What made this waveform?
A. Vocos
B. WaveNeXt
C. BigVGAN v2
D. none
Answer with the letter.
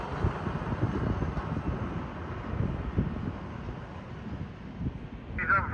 D